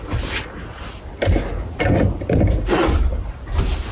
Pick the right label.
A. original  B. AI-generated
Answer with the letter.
A